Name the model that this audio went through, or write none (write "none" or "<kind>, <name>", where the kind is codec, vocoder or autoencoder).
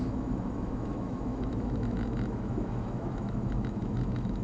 autoencoder, DAC-VAE